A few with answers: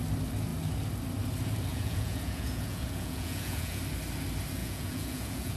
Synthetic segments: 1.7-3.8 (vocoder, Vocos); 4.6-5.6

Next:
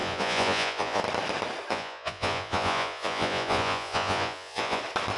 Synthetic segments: 0.0-1.0 (vocoder, Vocos); 1.7-4.8

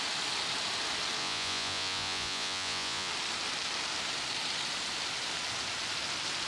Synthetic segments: 1.2-3.1 (vocoder, Vocos)